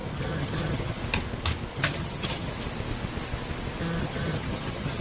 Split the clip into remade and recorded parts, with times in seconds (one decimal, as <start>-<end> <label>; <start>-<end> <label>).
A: 0.0-1.0 remade; 1.0-1.7 recorded; 1.7-2.5 remade; 2.5-4.0 recorded; 4.0-5.0 remade